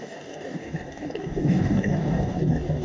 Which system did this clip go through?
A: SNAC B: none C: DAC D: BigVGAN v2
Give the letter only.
C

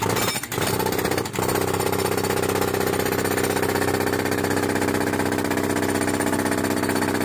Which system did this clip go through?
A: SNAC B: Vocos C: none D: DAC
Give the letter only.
C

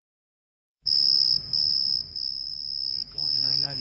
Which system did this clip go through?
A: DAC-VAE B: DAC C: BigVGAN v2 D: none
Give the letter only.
B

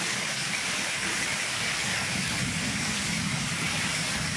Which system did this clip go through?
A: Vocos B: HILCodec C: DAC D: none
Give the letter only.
C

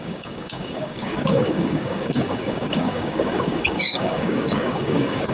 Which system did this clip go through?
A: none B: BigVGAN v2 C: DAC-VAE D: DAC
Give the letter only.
D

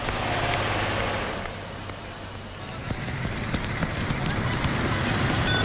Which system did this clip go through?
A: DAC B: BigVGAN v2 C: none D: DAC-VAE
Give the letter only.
C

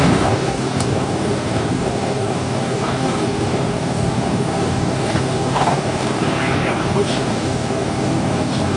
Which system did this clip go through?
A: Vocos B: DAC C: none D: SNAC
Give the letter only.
B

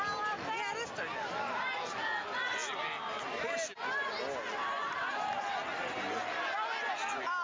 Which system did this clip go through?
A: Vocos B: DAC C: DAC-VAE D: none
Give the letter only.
D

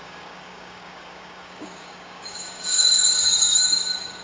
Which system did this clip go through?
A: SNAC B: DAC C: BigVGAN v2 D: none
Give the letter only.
B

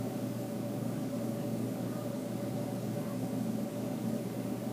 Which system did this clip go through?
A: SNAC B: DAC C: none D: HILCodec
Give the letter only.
B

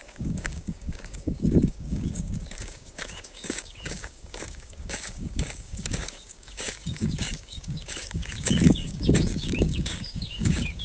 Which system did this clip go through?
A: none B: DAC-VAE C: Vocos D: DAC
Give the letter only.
D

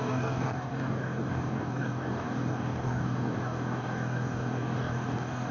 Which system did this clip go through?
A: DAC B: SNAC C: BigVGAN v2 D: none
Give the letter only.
A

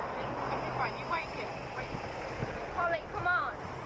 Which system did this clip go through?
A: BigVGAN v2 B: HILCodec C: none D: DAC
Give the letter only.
C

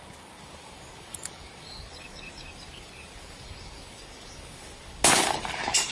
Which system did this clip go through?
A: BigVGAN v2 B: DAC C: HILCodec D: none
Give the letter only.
B